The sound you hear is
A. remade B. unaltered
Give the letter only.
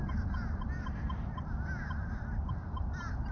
B